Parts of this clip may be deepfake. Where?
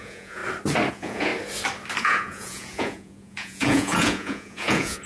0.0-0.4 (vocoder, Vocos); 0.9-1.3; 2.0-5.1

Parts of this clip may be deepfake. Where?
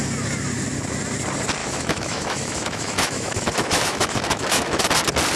1.6-4.8 (autoencoder, DAC-VAE)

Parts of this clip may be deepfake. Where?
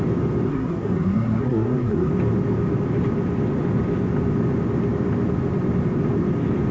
0.5-2.1 (codec, SNAC)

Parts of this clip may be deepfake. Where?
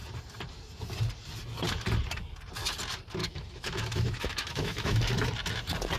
3.2-5.1 (autoencoder, DAC-VAE)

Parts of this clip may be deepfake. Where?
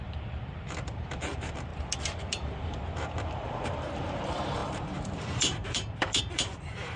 0.0-1.7 (vocoder, BigVGAN v2); 2.3-7.0